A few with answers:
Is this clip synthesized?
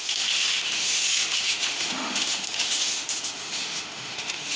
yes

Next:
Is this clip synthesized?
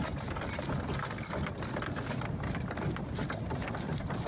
no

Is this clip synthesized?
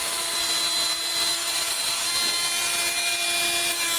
no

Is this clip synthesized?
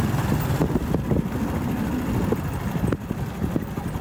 no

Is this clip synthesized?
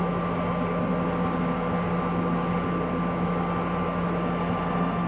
no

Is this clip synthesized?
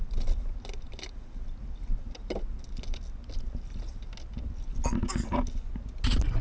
no